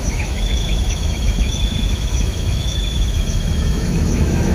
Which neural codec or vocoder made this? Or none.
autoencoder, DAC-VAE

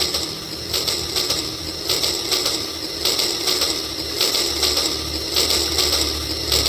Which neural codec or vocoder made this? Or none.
none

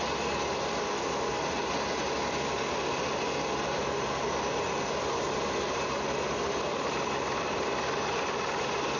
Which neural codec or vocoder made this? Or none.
none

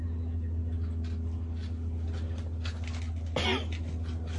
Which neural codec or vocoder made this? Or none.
none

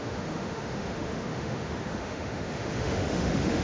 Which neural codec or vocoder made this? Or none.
autoencoder, DAC-VAE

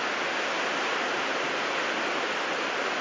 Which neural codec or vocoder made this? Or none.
none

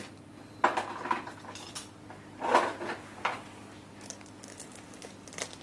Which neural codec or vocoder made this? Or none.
none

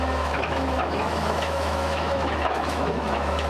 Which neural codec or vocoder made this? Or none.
autoencoder, DAC-VAE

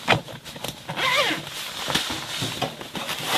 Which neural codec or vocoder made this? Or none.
none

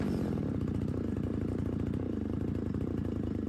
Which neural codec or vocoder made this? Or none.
none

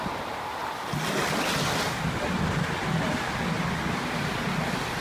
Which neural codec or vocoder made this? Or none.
none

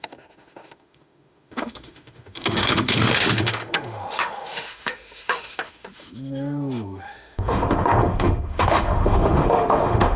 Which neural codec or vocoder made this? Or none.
autoencoder, DAC-VAE